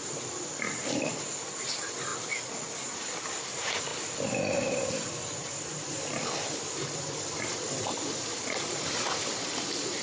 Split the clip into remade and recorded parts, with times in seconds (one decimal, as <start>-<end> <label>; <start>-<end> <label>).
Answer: 0.0-2.1 remade; 2.1-3.0 recorded; 3.0-3.9 remade; 3.9-4.5 recorded; 4.5-10.0 remade